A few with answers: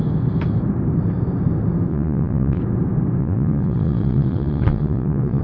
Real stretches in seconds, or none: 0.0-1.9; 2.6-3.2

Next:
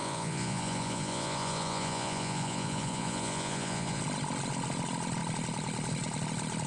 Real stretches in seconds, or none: 4.0-6.7

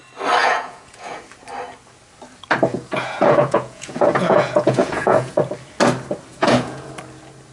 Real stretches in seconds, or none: 0.0-0.4; 1.2-2.7; 5.3-6.3; 6.9-7.5

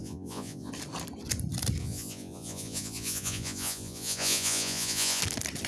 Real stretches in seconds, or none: 0.7-1.8; 5.2-5.7

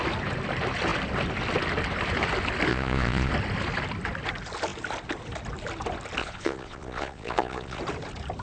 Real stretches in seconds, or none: 0.0-2.7; 3.3-6.2; 7.8-8.4

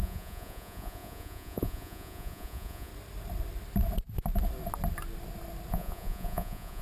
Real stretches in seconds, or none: 2.9-5.7